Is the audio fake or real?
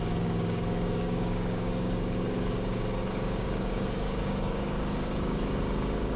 fake